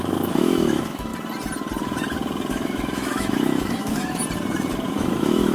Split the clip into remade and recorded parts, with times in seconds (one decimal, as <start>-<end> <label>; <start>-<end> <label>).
0.0-1.1 remade; 1.1-2.5 recorded; 2.5-4.2 remade; 4.2-4.9 recorded; 4.9-5.5 remade